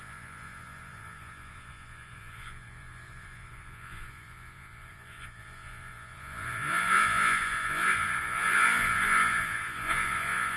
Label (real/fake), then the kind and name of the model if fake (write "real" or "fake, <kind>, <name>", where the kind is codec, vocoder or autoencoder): fake, vocoder, Vocos